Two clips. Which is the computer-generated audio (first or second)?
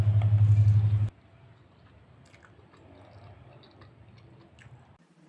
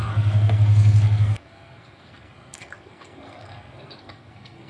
second